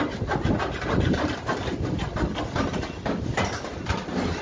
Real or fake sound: real